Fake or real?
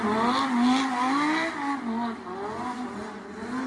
real